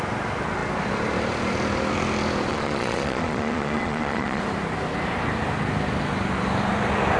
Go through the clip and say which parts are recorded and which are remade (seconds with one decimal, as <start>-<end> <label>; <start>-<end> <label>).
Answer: 0.0-2.5 recorded; 2.5-4.4 remade; 4.4-7.2 recorded